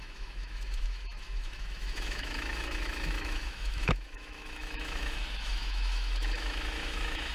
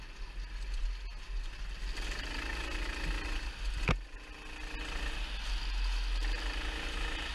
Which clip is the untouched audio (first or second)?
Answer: second